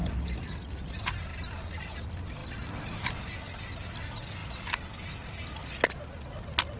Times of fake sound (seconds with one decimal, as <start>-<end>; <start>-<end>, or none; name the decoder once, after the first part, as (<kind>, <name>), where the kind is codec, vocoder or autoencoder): none